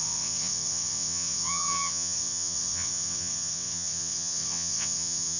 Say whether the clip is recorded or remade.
remade